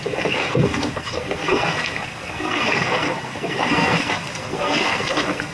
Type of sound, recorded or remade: remade